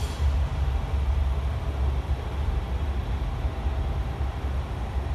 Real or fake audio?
real